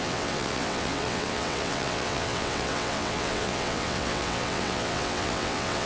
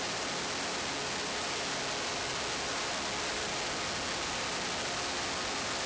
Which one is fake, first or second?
first